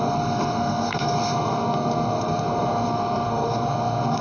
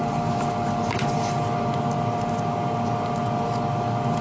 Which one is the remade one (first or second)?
first